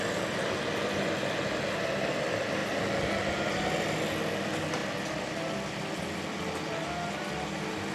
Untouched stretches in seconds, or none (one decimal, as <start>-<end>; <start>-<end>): 0.0-7.9